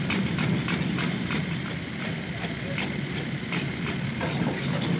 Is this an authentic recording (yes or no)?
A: yes